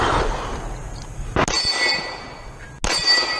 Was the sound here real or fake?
real